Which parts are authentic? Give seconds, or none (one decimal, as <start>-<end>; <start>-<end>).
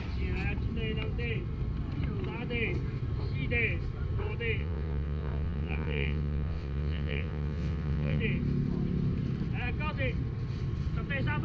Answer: 0.0-4.6; 8.2-11.4